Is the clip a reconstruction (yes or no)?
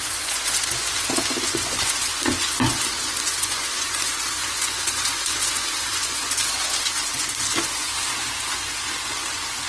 yes